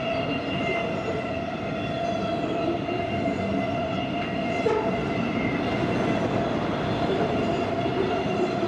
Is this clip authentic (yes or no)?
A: yes